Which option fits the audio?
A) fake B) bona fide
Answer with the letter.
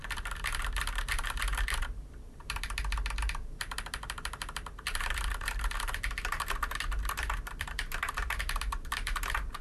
A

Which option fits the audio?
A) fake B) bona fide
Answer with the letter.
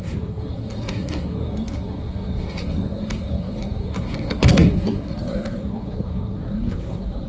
A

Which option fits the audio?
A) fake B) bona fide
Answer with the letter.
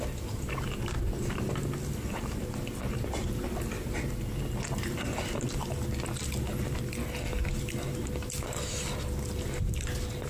B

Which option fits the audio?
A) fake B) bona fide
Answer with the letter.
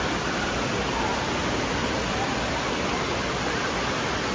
B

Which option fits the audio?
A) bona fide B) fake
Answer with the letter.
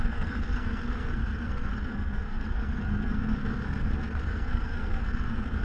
B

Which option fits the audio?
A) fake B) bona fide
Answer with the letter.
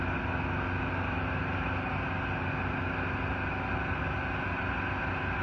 B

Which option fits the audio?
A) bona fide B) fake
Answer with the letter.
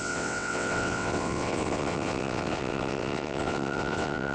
B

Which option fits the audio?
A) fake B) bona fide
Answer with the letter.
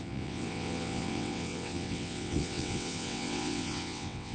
A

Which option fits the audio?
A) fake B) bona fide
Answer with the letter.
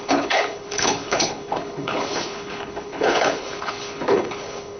A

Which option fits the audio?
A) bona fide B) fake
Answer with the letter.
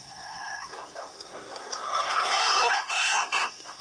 B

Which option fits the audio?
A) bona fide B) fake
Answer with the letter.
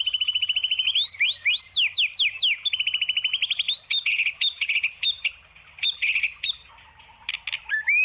A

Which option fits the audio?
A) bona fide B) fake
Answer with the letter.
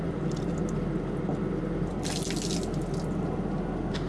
A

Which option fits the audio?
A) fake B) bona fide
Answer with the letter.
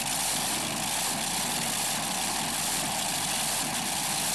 B